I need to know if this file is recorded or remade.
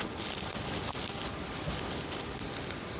recorded